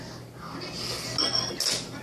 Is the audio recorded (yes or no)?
yes